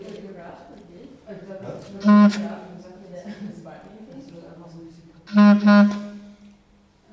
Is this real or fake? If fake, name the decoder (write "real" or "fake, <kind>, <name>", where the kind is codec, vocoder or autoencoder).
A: real